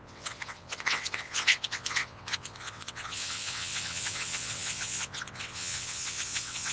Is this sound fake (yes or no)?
yes